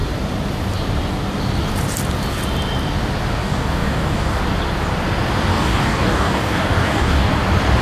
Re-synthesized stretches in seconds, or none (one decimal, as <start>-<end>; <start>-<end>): 3.4-4.4; 5.5-7.3